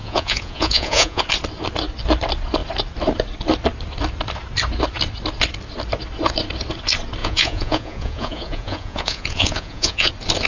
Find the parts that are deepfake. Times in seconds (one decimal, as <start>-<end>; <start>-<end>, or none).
0.0-1.2; 7.2-10.1